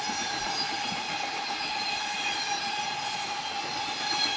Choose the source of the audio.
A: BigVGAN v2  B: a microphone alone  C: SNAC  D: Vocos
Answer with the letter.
B